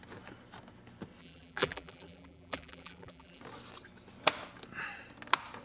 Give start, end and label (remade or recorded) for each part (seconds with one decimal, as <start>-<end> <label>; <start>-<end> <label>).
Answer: 0.0-1.2 recorded; 1.2-3.4 remade; 3.4-5.6 recorded